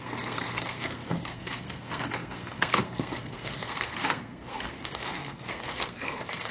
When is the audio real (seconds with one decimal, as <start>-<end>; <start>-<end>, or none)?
none